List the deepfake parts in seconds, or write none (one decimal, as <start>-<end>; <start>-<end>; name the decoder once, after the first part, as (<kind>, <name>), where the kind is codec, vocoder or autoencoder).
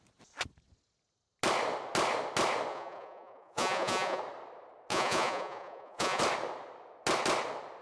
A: 2.7-4.2 (vocoder, Vocos); 4.9-6.2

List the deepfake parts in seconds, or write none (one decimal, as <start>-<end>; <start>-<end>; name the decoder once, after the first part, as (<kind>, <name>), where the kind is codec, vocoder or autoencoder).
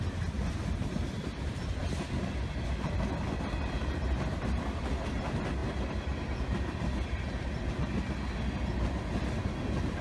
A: none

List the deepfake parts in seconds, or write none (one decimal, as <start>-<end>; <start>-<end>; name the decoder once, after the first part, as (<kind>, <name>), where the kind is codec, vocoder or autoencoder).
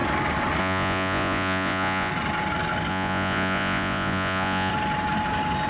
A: 0.6-2.1 (vocoder, Vocos); 2.9-4.7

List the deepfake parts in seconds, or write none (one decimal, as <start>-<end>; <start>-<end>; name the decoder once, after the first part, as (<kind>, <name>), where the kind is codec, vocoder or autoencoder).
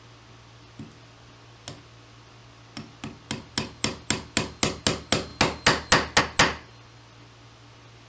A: none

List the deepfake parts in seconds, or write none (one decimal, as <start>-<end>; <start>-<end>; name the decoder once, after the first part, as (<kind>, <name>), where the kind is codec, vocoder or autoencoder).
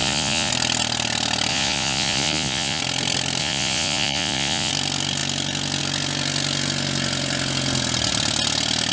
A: 0.0-0.5 (vocoder, Vocos); 1.5-2.8; 3.4-4.7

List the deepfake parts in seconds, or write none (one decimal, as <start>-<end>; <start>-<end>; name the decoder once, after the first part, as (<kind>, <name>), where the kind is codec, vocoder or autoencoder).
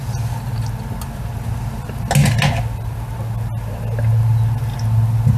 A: none